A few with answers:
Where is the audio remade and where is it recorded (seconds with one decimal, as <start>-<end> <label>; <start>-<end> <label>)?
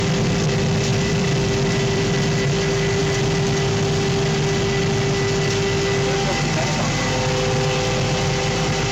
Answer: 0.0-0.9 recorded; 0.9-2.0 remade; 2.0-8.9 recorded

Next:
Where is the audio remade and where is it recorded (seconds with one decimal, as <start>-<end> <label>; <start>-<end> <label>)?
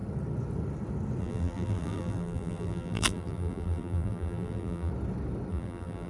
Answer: 0.0-1.2 recorded; 1.2-4.9 remade; 4.9-5.5 recorded; 5.5-6.1 remade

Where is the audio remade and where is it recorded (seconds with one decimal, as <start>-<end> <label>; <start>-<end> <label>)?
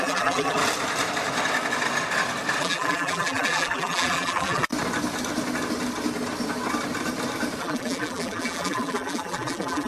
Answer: 0.0-0.6 remade; 0.6-2.6 recorded; 2.6-4.7 remade; 4.7-7.6 recorded; 7.6-9.9 remade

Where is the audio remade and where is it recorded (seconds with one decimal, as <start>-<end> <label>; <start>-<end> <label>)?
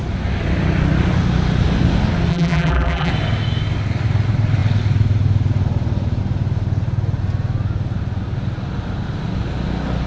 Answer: 0.0-2.3 recorded; 2.3-3.1 remade; 3.1-10.1 recorded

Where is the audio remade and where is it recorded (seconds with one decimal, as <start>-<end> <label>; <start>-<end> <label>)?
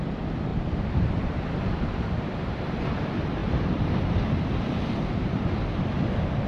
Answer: 0.0-0.5 recorded; 0.5-2.8 remade; 2.8-6.5 recorded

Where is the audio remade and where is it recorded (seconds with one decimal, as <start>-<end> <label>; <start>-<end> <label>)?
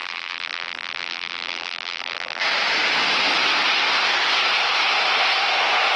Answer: 0.0-2.4 remade; 2.4-6.0 recorded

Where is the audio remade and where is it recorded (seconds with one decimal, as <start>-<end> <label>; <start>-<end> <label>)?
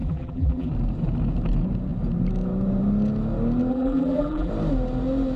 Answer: 0.0-0.7 remade; 0.7-3.7 recorded; 3.7-4.5 remade; 4.5-5.4 recorded